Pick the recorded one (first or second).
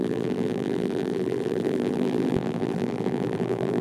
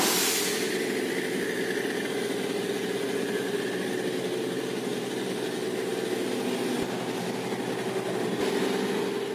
second